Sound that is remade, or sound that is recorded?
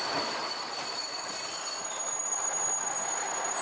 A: recorded